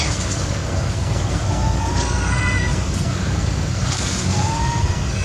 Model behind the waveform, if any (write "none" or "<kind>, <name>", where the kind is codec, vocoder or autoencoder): codec, SNAC